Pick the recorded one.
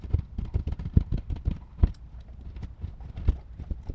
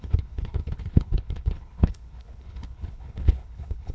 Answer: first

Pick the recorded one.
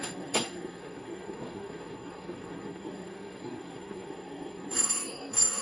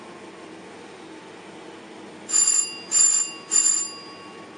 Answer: second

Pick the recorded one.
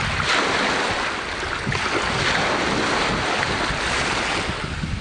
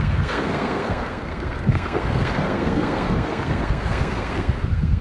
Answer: first